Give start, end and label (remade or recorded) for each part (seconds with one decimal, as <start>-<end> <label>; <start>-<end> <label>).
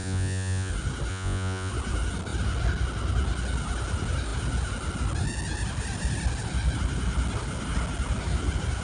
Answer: 0.0-0.7 remade; 0.7-1.1 recorded; 1.1-1.7 remade; 1.7-8.8 recorded